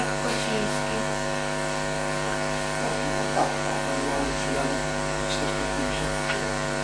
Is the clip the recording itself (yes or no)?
no